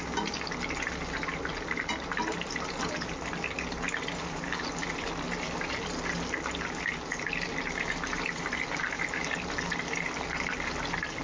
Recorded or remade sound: recorded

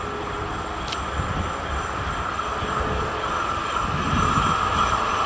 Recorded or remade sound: recorded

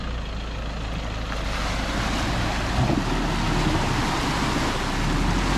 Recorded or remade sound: recorded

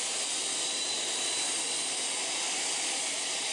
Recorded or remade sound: recorded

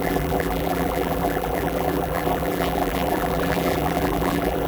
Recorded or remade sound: remade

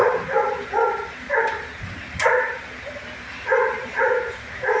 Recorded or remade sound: remade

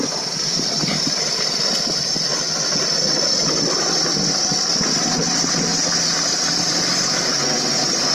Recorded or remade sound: recorded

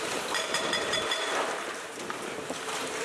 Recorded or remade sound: remade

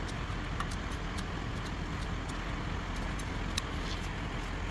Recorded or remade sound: recorded